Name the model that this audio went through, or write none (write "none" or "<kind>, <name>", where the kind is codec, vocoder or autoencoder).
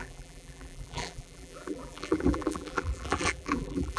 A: vocoder, BigVGAN v2